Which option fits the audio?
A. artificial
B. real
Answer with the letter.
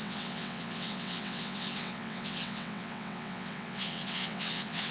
A